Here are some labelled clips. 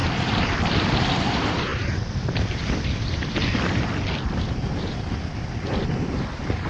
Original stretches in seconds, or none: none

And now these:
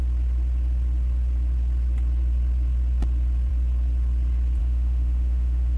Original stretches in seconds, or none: 0.0-4.6

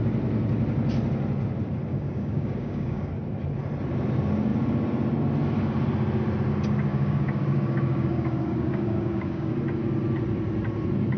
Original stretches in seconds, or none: 0.0-1.9; 3.1-6.9; 9.5-11.2

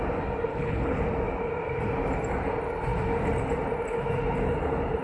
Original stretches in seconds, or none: 0.0-0.5; 1.0-5.0

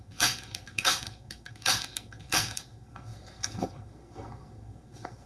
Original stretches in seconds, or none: none

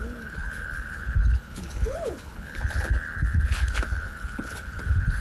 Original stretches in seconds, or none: none